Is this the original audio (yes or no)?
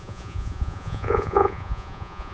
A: no